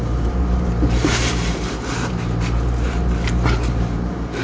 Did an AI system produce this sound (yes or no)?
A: yes